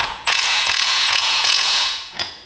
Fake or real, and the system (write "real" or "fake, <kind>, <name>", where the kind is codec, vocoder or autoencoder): fake, vocoder, Vocos